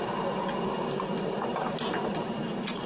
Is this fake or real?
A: real